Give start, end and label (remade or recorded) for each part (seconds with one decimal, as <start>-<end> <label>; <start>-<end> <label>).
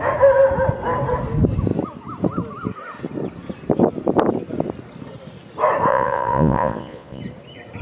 0.0-5.9 recorded; 5.9-7.2 remade; 7.2-7.8 recorded